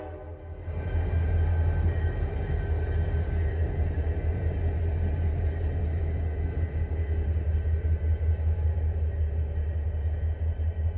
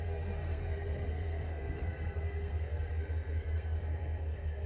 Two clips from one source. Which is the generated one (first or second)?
second